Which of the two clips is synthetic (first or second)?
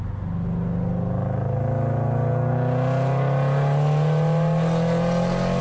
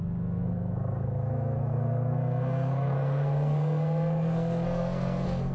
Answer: second